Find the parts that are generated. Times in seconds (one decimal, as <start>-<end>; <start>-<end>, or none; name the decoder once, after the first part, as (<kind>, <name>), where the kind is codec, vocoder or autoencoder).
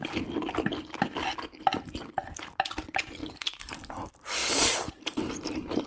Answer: 3.2-3.8 (vocoder, BigVGAN v2); 4.4-5.3